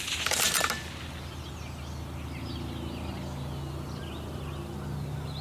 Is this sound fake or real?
real